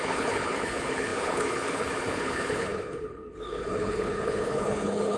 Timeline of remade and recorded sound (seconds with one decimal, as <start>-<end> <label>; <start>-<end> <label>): 0.0-5.2 remade